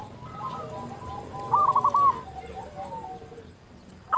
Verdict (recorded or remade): recorded